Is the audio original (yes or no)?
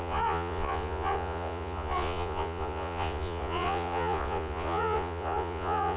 no